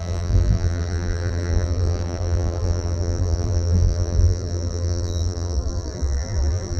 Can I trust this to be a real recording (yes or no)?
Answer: no